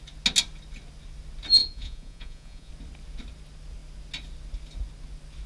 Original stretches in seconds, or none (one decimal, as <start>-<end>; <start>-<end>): 0.0-1.6; 2.7-5.5